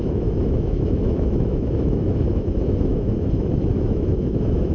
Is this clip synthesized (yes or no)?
yes